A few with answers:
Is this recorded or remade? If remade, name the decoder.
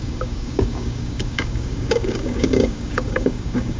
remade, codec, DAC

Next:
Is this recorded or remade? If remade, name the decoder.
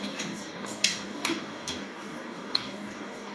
remade, codec, DAC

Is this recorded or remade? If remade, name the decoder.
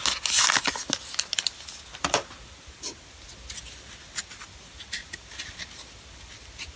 recorded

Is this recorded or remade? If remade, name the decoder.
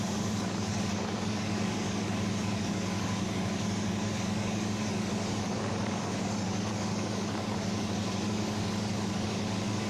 remade, codec, DAC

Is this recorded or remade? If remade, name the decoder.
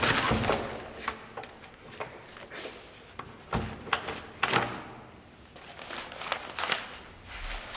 recorded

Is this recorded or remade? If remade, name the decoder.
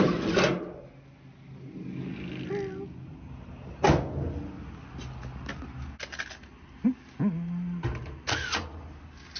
recorded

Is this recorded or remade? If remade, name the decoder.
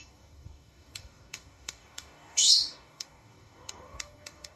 remade, codec, DAC